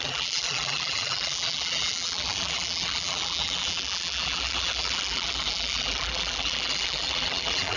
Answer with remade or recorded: remade